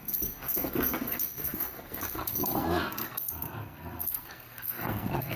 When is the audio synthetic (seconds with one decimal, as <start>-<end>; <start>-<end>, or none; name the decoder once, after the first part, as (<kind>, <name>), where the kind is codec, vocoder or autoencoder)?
0.0-5.4 (codec, SNAC)